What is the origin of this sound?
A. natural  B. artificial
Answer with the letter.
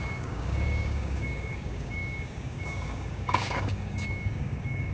B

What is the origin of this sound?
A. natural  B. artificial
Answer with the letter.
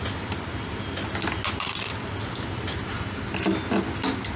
A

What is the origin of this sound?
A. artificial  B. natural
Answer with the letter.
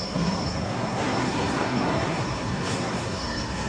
A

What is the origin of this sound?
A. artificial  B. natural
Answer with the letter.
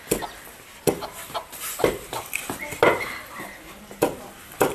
B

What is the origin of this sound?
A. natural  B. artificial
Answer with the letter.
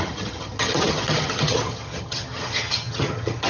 B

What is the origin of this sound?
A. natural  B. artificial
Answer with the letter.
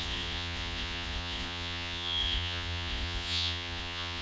B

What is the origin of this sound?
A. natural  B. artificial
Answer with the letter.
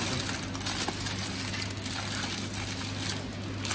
A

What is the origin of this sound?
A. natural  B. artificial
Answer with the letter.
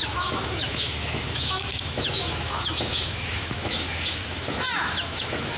B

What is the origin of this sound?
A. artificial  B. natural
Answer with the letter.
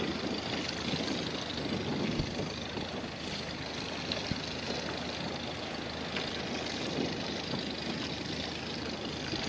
B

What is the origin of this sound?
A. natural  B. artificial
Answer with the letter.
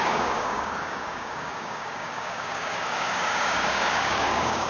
B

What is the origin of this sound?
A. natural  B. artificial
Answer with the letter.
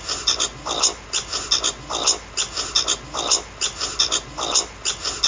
A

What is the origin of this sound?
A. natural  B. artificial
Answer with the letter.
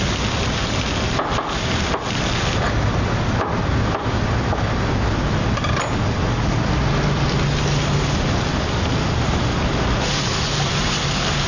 A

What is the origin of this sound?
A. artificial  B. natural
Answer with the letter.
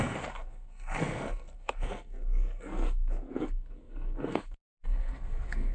A